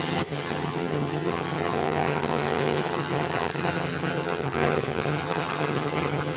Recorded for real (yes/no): no